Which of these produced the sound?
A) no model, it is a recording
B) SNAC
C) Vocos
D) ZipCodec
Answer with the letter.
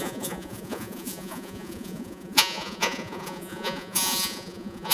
C